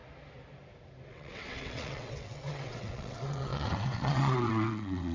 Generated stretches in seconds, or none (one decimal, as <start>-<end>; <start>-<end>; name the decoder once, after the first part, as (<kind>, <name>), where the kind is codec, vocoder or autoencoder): 1.1-5.1 (vocoder, WaveNeXt)